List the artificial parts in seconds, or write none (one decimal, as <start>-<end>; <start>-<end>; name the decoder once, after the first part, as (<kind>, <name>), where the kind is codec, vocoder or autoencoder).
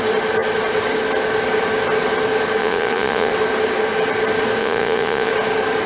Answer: 2.6-3.3 (vocoder, Vocos); 4.6-5.3